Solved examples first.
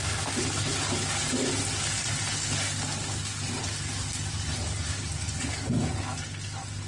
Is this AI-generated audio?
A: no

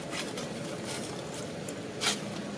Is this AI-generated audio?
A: no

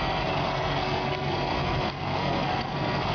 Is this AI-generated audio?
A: yes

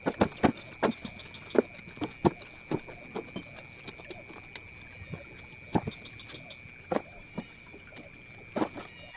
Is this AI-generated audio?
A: no